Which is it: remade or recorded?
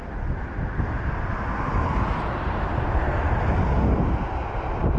recorded